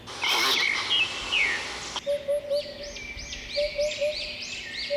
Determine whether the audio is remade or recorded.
recorded